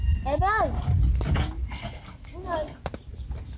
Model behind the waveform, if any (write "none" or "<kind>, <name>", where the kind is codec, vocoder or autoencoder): none